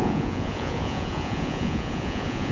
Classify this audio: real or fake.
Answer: fake